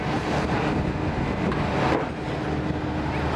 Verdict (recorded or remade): recorded